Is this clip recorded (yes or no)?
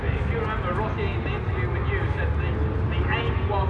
yes